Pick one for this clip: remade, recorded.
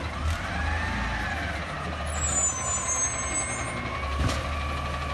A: recorded